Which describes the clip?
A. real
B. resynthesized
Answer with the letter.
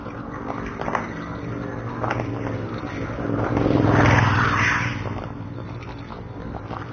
A